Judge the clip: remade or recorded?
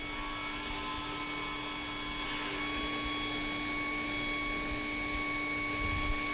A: recorded